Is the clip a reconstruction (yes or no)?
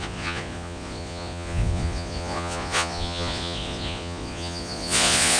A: yes